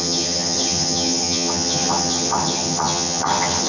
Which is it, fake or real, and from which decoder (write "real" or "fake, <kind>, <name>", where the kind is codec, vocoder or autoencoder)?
fake, vocoder, HiFi-GAN